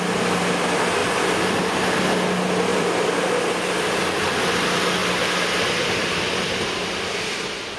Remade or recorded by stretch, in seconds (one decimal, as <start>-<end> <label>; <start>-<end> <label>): 0.0-1.0 recorded; 1.0-1.6 remade; 1.6-2.7 recorded; 2.7-3.3 remade; 3.3-7.8 recorded